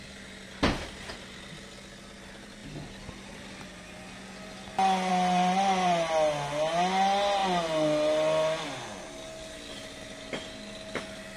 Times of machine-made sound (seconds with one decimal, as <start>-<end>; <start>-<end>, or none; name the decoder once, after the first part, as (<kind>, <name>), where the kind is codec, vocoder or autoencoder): none

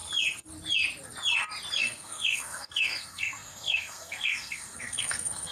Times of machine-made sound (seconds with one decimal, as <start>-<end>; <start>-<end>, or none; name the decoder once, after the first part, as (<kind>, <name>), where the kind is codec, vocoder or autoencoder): 1.8-5.5 (codec, SNAC)

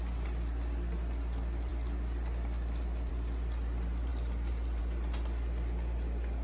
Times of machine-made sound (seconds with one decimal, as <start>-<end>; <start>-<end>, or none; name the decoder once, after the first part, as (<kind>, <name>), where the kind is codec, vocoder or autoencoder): none

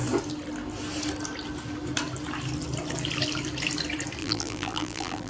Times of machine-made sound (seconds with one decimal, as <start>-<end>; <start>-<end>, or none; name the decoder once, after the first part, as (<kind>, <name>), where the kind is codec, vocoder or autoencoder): 4.2-5.3 (vocoder, BigVGAN v2)

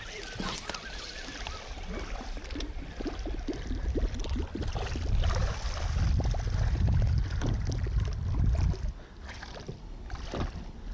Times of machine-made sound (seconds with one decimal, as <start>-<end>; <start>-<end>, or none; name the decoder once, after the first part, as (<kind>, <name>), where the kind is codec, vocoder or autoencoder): none

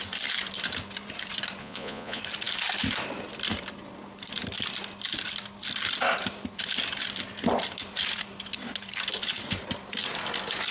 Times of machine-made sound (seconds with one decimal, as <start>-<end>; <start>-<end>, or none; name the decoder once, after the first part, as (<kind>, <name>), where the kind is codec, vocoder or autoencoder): 1.6-2.2 (vocoder, Vocos)

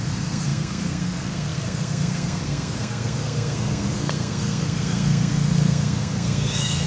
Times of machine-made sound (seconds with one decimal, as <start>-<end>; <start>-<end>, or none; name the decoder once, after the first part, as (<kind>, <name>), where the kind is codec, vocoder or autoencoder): 0.0-6.9 (codec, SNAC)